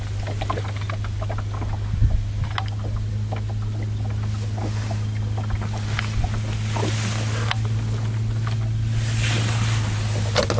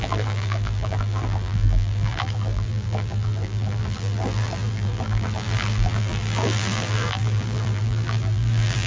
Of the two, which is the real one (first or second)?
first